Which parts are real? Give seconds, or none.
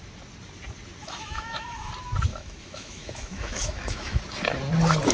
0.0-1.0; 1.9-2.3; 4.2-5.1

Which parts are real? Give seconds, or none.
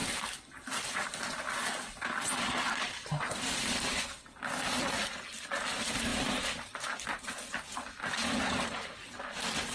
0.0-9.7